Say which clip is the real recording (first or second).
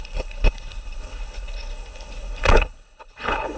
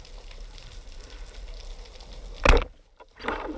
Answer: second